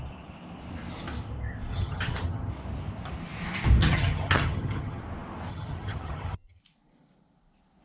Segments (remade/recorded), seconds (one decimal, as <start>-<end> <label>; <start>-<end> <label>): 0.0-1.7 recorded; 1.7-2.5 remade; 2.5-3.8 recorded; 3.8-5.0 remade; 5.0-5.5 recorded; 5.5-6.6 remade; 6.6-7.8 recorded